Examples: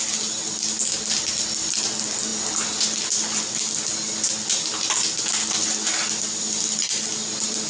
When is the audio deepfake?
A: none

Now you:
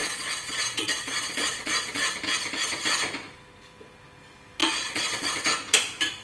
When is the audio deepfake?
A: 0.0-2.1 (vocoder, Vocos); 4.6-5.3